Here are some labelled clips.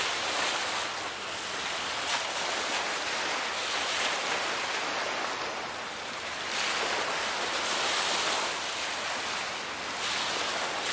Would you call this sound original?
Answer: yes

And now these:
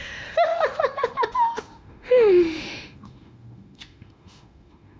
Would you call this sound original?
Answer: no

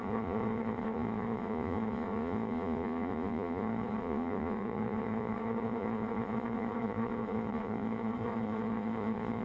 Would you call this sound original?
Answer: no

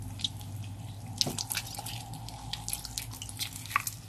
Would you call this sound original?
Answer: yes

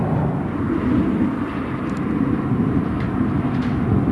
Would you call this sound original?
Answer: yes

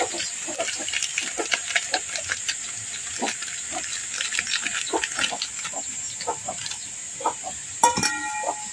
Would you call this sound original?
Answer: yes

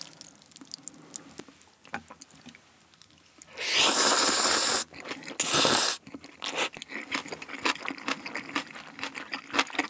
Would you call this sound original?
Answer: yes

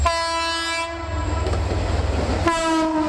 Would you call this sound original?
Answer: yes